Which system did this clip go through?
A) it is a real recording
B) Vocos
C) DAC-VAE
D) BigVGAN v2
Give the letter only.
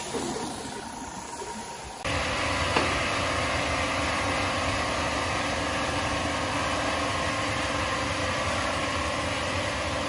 A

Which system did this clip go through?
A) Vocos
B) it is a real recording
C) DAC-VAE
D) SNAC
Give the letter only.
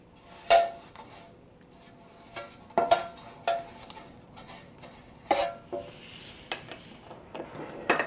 B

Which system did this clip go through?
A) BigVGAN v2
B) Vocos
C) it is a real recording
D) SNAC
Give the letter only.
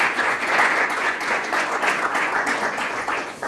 B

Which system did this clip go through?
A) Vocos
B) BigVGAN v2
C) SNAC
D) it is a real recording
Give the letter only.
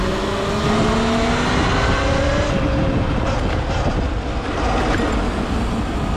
D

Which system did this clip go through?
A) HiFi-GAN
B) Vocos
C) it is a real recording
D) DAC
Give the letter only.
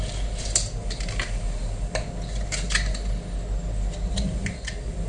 C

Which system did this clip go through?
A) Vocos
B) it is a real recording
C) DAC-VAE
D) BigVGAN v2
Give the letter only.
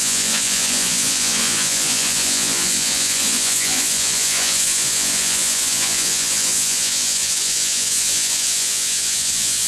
A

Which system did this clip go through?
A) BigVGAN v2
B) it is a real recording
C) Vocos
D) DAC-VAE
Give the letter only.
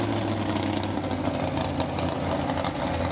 B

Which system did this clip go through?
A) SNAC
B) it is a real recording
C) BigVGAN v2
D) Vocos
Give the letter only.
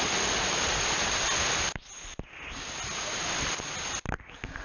B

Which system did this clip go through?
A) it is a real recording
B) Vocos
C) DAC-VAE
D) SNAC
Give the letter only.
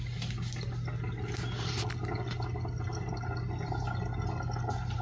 A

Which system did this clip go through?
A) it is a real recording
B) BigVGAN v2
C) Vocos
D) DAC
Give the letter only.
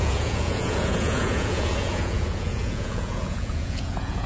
C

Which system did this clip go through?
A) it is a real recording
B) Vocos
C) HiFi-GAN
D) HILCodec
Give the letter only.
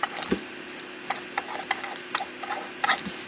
A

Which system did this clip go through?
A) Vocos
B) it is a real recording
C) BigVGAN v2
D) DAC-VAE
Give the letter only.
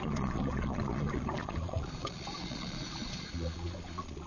A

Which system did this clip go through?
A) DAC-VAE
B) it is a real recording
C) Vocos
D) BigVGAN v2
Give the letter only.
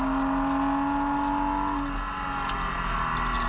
B